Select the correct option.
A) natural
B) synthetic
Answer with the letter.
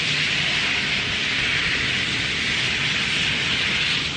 A